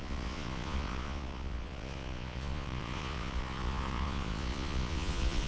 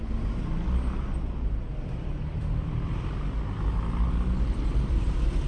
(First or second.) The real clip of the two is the second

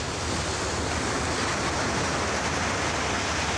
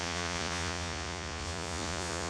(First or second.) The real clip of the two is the first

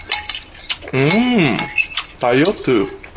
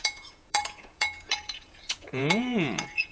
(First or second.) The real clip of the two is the first